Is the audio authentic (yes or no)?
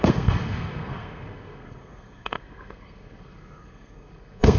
no